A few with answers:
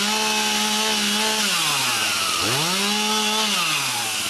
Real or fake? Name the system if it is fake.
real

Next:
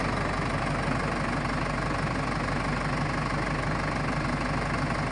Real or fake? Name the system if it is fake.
real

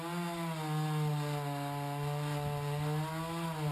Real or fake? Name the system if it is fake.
real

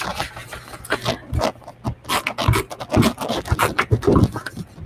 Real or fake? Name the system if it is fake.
real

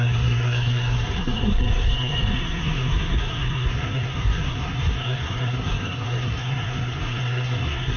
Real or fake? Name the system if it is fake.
fake, codec, SNAC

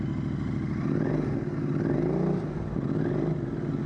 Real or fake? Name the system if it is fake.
real